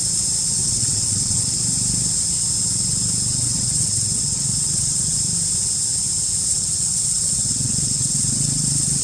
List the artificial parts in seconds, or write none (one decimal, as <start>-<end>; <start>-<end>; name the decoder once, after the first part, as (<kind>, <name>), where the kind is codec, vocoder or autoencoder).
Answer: 0.6-1.6 (vocoder, WaveNeXt); 3.3-5.2; 6.5-9.0